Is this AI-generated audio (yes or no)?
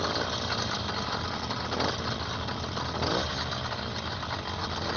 no